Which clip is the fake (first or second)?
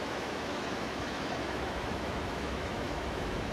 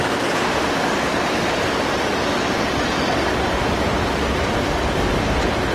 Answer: first